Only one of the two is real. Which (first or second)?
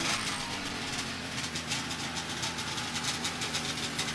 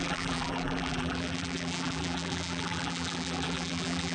first